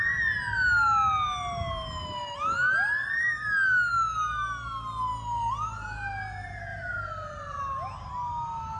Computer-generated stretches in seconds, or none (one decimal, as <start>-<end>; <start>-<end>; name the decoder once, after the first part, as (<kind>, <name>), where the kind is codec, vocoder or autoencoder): 6.7-7.6 (vocoder, BigVGAN v2)